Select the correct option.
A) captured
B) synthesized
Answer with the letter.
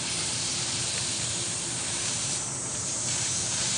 B